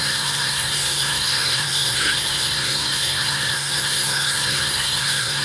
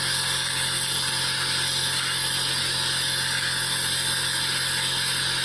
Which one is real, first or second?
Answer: second